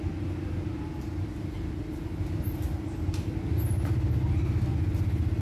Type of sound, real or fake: real